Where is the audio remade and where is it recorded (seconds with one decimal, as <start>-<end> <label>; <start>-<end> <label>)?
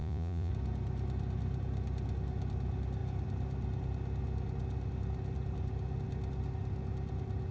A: 0.0-0.5 remade; 0.5-7.5 recorded